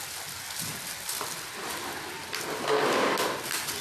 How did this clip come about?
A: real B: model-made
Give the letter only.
A